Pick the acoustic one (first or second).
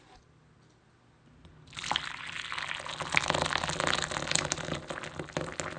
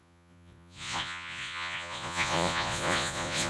first